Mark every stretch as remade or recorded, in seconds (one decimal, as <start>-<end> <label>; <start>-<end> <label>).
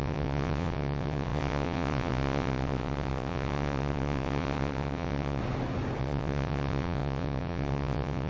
0.0-5.4 remade; 5.4-6.0 recorded; 6.0-8.3 remade